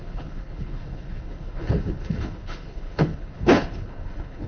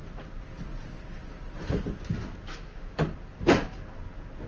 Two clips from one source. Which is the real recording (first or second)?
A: second